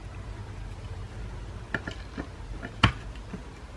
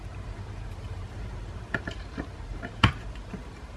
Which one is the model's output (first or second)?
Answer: second